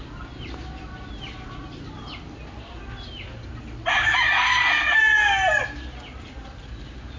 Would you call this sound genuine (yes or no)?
yes